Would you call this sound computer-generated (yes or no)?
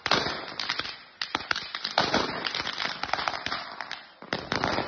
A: no